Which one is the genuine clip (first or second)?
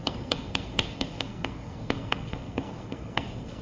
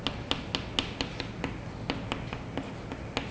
second